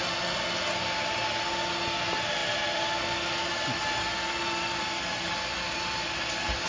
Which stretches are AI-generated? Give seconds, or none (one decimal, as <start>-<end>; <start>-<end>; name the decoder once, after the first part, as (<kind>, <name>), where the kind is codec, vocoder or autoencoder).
none